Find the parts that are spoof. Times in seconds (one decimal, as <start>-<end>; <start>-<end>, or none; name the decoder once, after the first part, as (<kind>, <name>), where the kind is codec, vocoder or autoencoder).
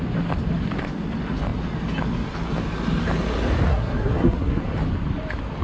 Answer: 3.7-4.6 (codec, SNAC)